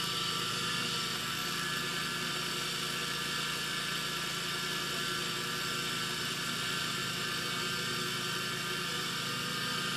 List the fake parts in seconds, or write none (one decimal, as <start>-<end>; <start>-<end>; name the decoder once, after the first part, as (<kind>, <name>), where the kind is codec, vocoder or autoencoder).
none